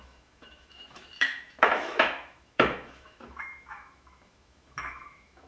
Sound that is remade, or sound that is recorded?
remade